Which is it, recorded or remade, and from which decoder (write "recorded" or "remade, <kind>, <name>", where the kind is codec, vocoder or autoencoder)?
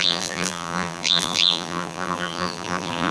remade, vocoder, BigVGAN v2